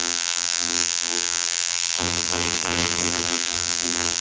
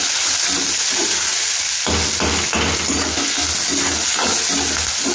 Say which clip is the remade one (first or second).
first